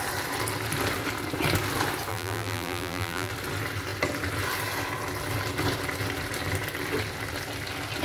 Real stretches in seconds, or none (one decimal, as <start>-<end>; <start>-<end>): 0.0-2.1; 3.3-8.0